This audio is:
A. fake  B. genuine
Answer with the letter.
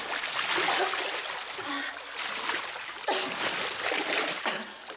B